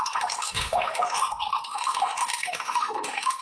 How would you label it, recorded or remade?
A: remade